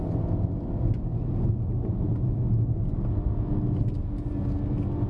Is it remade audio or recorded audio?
recorded